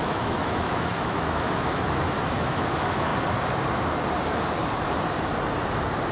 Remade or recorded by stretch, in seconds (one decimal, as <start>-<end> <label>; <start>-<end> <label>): 0.0-3.1 remade; 3.1-6.1 recorded